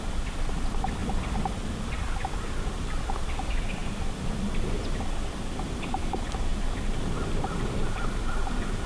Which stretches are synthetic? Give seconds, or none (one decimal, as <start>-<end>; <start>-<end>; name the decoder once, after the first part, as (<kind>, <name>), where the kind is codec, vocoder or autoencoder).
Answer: none